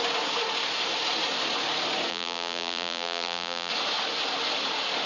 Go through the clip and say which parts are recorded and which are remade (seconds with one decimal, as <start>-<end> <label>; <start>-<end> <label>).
0.0-2.1 recorded; 2.1-3.7 remade; 3.7-5.1 recorded